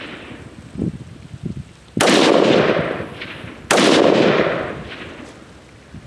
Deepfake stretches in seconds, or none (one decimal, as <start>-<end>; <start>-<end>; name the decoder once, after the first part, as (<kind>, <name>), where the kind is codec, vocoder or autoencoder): none